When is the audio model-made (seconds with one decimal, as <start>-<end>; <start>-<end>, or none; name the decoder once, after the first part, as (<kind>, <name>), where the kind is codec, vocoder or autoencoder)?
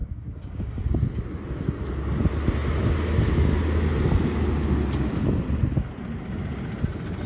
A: 0.0-0.8 (codec, DAC)